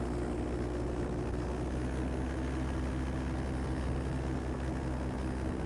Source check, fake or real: real